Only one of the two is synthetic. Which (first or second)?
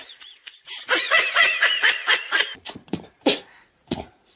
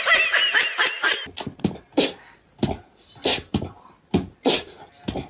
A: first